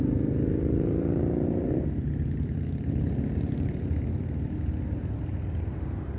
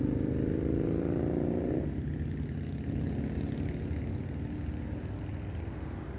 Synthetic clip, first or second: first